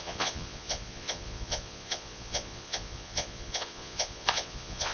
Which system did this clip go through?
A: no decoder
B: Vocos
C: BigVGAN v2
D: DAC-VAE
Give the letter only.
B